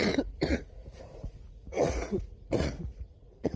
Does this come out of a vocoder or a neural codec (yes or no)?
yes